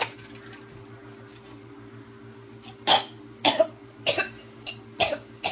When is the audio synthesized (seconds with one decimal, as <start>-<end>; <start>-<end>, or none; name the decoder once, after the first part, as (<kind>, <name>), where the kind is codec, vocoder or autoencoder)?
none

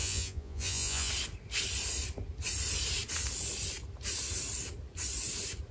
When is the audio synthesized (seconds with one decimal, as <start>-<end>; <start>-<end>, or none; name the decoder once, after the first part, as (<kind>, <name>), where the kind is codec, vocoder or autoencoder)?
0.0-1.1 (vocoder, Vocos)

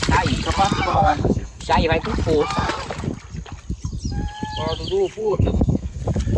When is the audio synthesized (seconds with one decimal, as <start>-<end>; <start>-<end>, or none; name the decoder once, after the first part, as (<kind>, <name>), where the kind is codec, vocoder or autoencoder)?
0.9-1.6 (codec, SNAC); 5.2-6.0